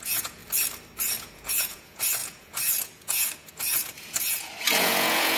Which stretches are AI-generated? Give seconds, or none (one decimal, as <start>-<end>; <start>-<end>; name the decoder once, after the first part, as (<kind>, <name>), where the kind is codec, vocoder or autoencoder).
0.0-0.4 (vocoder, Vocos); 1.0-5.4